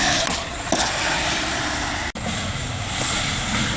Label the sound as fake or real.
real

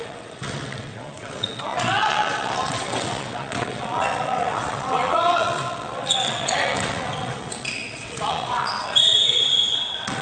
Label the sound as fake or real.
fake